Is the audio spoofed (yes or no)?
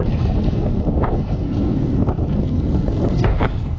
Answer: yes